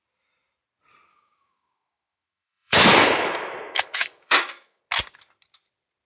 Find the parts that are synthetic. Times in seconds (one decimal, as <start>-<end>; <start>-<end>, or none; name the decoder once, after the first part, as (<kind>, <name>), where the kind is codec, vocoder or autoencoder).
1.1-4.8 (autoencoder, DAC-VAE)